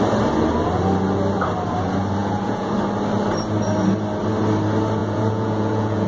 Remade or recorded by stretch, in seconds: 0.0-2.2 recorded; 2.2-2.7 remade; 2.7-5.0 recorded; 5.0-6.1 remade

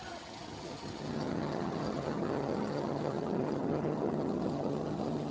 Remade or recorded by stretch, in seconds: 0.0-5.3 remade